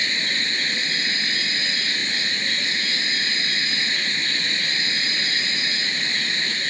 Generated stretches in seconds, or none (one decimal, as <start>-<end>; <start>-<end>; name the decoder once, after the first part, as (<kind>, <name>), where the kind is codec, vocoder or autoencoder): none